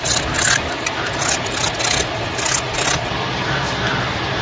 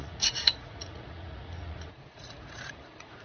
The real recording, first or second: first